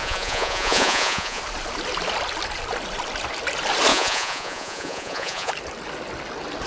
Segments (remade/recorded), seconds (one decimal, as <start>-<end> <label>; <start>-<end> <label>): 0.0-1.4 remade; 1.4-3.9 recorded; 3.9-5.5 remade; 5.5-6.7 recorded

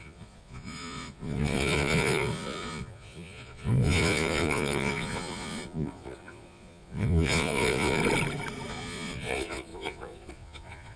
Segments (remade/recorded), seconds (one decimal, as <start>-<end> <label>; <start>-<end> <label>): 0.0-8.0 remade; 8.0-8.7 recorded; 8.7-11.0 remade

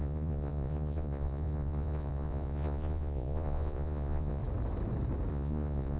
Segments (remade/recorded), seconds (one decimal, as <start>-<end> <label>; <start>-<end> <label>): 0.0-4.4 remade; 4.4-5.3 recorded; 5.3-6.0 remade